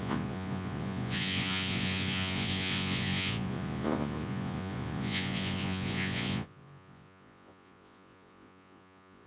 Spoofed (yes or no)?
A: yes